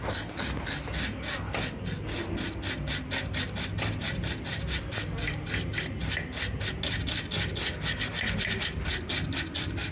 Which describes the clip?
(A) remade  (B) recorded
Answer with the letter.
B